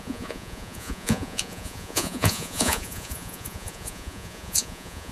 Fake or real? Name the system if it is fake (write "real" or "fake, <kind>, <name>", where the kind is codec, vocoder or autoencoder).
fake, vocoder, Vocos